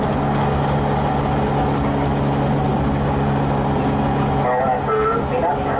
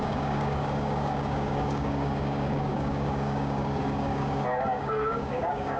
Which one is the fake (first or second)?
second